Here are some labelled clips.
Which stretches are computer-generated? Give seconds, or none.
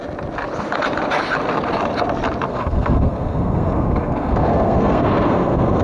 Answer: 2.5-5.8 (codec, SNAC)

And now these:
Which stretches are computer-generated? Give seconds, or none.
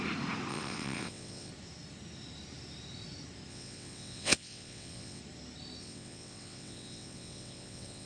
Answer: 0.5-1.5 (vocoder, WaveNeXt); 3.5-5.2; 5.8-8.1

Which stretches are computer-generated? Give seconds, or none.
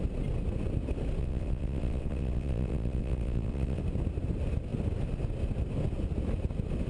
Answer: 1.2-3.8 (vocoder, WaveNeXt)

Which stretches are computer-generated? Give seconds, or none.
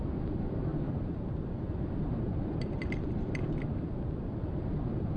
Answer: 0.7-3.8 (vocoder, BigVGAN v2)